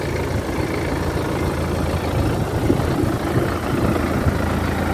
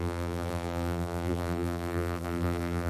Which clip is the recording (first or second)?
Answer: first